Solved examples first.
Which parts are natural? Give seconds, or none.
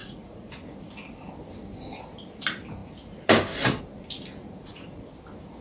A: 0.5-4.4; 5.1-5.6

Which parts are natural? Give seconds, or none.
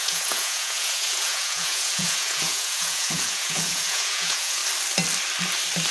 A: 4.6-5.9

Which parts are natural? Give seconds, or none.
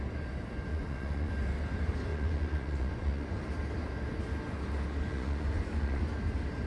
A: 0.0-0.7; 1.3-2.1; 3.4-5.1; 6.0-6.7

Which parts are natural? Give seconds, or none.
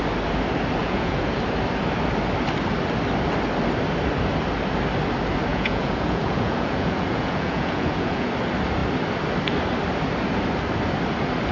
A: 0.0-0.8; 1.4-5.5; 8.3-11.5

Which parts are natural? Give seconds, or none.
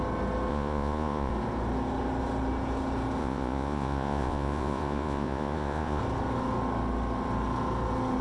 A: 0.0-0.5; 1.3-3.2; 6.0-8.2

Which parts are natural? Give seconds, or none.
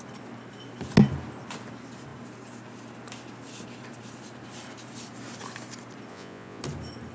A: 0.0-6.1; 6.6-7.1